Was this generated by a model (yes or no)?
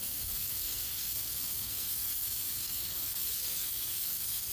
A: yes